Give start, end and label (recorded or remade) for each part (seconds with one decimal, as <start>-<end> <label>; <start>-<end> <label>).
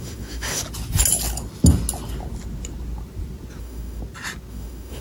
0.0-0.6 remade; 0.6-3.6 recorded; 3.6-4.0 remade; 4.0-4.5 recorded; 4.5-5.0 remade